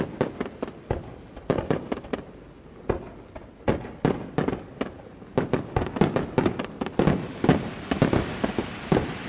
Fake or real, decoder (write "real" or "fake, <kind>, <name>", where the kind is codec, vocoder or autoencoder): real